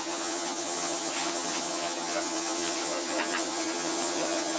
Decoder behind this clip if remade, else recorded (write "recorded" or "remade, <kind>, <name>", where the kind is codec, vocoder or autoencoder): remade, vocoder, HiFi-GAN